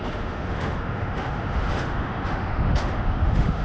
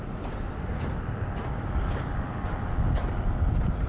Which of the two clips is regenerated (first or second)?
first